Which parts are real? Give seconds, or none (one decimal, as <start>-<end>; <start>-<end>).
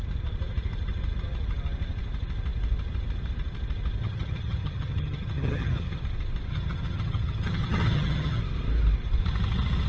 0.0-4.0; 6.0-6.5; 8.4-9.9